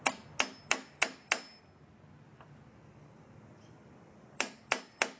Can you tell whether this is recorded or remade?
recorded